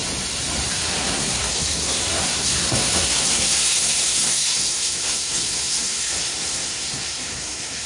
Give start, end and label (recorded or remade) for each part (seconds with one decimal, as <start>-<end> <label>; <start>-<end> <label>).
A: 0.0-0.7 recorded; 0.7-7.9 remade